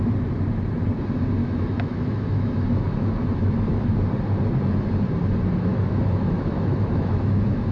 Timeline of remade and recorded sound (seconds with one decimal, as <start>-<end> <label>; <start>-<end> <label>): 0.0-1.4 recorded; 1.4-3.9 remade; 3.9-5.7 recorded; 5.7-7.7 remade